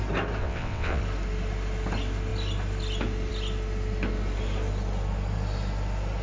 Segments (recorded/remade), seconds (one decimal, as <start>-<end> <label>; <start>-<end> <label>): 0.0-0.4 recorded; 0.4-1.0 remade; 1.0-6.2 recorded